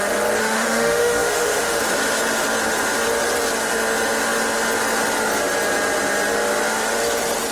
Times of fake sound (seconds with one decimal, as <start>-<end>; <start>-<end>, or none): 0.4-1.8